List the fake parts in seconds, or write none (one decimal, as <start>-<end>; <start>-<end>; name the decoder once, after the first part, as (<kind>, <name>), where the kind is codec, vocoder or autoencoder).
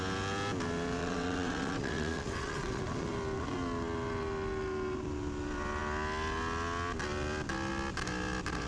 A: 1.0-2.8 (vocoder, WaveNeXt)